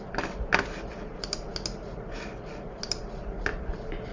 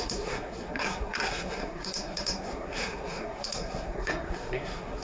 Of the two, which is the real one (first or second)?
first